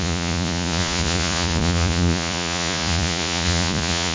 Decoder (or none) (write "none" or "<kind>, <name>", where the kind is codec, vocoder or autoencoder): vocoder, Vocos